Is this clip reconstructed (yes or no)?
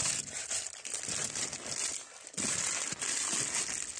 no